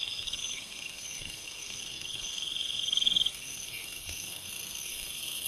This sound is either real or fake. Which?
fake